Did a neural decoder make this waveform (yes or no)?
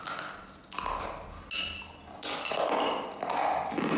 no